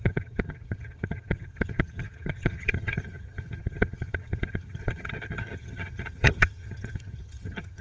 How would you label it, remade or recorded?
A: remade